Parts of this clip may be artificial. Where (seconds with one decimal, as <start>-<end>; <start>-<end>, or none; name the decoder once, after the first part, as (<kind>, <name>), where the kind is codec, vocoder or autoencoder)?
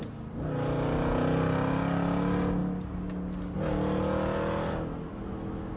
none